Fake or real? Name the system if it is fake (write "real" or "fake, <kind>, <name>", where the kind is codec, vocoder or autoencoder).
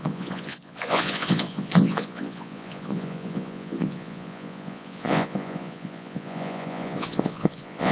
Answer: fake, vocoder, Vocos